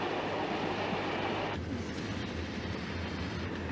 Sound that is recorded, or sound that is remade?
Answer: recorded